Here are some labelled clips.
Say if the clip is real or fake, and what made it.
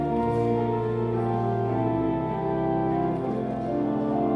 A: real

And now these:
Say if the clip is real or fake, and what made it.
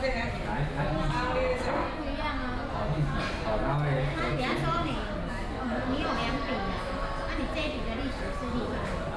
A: real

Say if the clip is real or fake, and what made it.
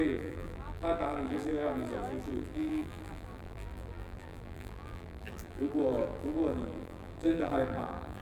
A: fake, vocoder, BigVGAN v2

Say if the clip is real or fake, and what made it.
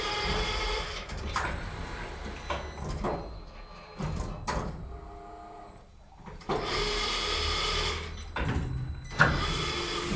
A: real